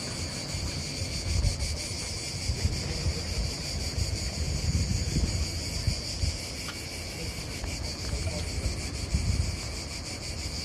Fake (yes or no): no